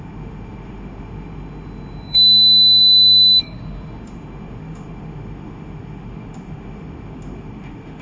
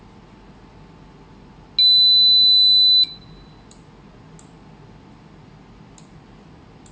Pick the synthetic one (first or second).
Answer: first